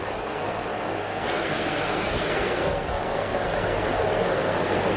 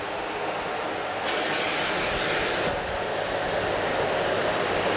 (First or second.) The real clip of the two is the second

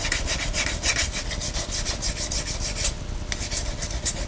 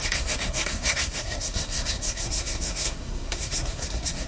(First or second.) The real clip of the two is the first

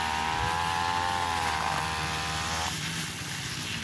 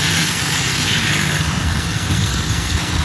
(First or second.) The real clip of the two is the first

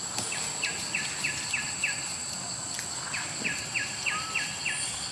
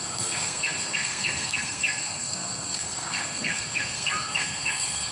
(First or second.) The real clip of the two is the first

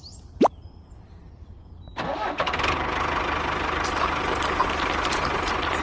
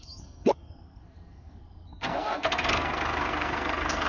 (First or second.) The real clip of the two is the first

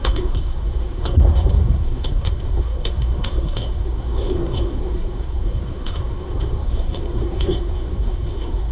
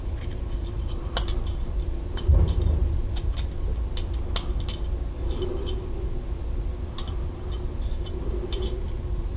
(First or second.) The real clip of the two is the second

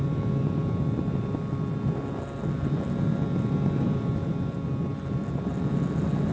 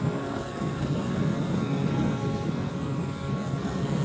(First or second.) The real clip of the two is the first